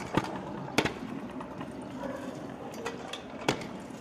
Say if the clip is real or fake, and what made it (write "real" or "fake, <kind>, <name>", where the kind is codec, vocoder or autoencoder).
real